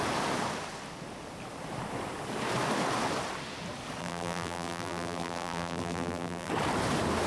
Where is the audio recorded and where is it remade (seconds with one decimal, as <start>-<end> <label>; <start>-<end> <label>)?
0.0-4.0 recorded; 4.0-6.5 remade; 6.5-7.3 recorded